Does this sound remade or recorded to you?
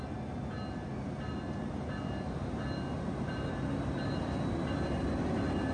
recorded